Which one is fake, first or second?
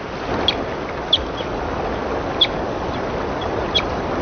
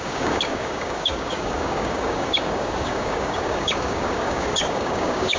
second